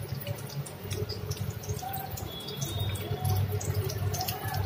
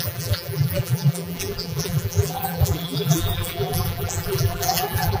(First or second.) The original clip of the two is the first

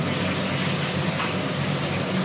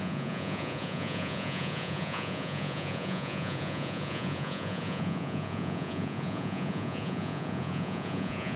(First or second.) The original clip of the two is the first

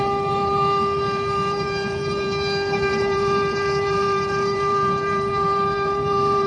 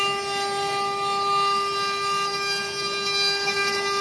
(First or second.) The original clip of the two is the second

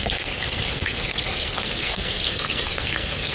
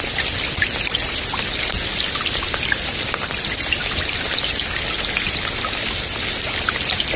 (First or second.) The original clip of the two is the second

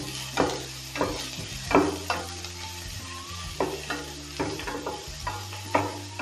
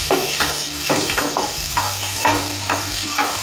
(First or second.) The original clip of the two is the first